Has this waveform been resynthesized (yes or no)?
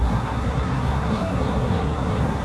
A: yes